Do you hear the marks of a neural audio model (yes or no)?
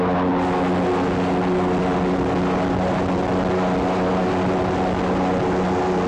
no